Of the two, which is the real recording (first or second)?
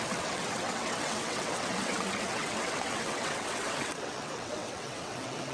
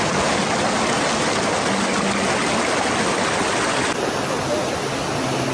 second